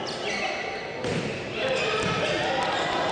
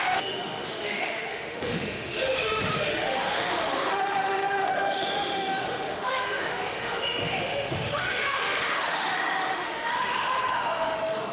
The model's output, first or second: second